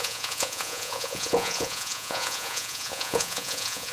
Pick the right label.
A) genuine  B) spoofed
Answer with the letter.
B